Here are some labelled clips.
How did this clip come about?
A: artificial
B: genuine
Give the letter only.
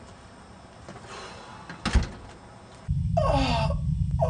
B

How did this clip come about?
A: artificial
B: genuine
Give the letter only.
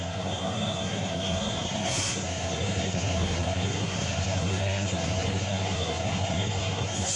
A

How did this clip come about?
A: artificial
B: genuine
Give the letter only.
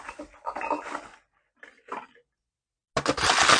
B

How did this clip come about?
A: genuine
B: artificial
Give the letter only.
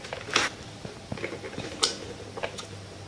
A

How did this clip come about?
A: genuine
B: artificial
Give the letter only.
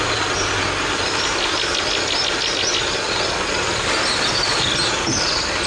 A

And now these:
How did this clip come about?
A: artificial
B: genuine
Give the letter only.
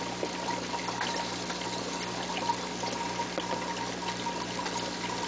B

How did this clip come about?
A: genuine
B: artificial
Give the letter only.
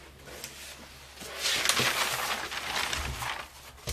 A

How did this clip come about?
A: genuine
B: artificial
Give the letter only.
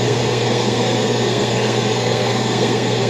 B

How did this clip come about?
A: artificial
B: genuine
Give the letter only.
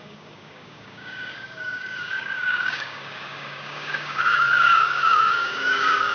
A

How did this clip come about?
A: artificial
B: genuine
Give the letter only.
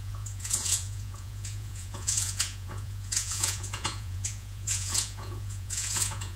A